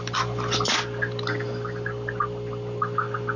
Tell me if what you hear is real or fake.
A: real